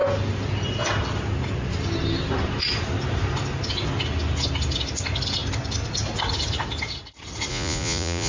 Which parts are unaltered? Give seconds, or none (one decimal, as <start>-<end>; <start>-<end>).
0.0-7.5